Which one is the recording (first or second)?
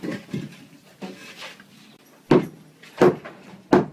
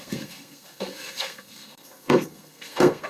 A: first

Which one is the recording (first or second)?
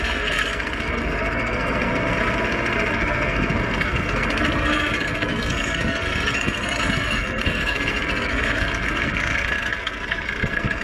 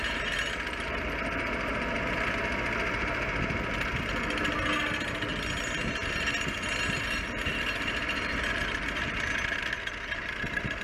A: second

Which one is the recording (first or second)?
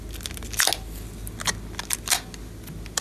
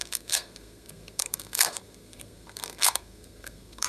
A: first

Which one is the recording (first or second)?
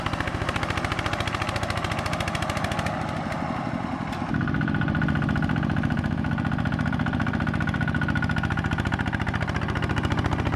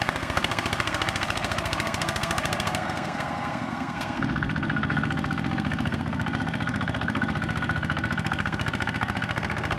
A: first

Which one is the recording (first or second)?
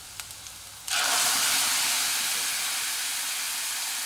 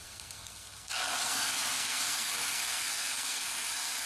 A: first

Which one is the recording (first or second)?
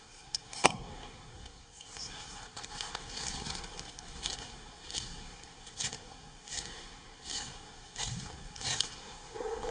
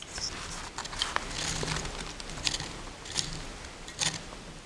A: second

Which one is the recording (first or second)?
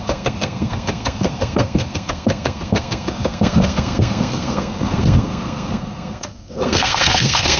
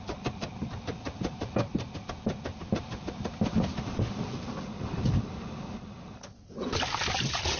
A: second